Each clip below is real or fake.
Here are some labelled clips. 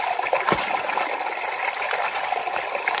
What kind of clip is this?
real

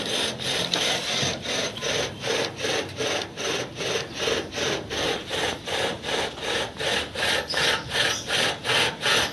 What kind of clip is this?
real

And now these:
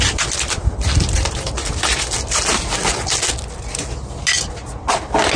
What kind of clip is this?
real